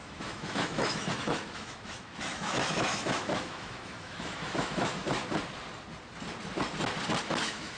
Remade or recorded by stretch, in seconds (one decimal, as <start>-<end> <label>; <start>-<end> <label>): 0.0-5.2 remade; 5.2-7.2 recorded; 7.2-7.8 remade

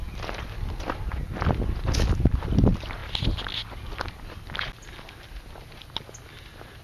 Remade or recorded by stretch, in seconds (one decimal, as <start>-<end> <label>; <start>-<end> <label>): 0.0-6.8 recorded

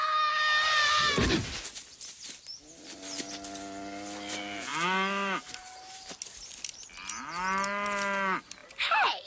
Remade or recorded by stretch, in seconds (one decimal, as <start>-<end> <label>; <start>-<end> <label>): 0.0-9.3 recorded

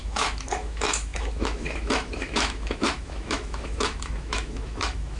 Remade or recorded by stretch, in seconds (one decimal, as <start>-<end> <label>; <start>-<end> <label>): 0.0-5.2 remade

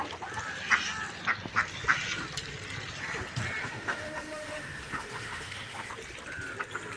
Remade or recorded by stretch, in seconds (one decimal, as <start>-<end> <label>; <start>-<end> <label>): 0.0-3.6 recorded; 3.6-5.9 remade; 5.9-7.0 recorded

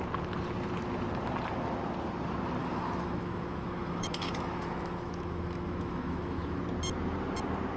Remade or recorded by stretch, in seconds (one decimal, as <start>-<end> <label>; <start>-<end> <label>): 0.0-2.6 recorded; 2.6-6.6 remade; 6.6-7.8 recorded

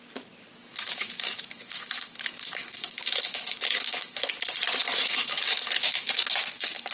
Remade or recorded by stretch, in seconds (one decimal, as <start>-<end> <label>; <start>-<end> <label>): 0.0-0.7 recorded; 0.7-4.3 remade; 4.3-4.9 recorded; 4.9-6.9 remade

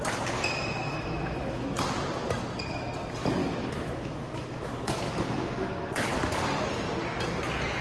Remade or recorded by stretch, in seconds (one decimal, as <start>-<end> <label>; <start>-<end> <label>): 0.0-0.8 recorded; 0.8-1.8 remade; 1.8-3.4 recorded; 3.4-6.4 remade; 6.4-7.8 recorded